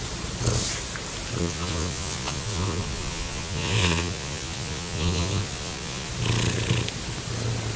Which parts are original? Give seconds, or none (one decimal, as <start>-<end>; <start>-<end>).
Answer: 0.0-1.4; 6.1-7.8